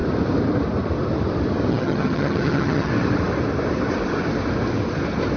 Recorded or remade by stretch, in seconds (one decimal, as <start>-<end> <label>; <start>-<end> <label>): 0.0-1.7 recorded; 1.7-2.9 remade; 2.9-5.4 recorded